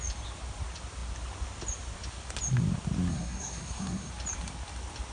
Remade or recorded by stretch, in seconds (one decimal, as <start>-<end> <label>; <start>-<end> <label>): 0.0-3.1 recorded; 3.1-4.1 remade; 4.1-5.1 recorded